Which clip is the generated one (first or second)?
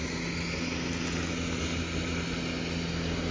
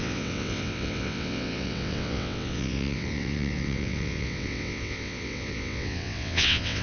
second